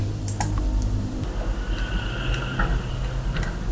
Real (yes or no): yes